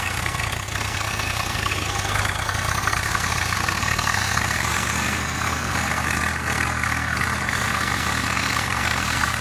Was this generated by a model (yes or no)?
yes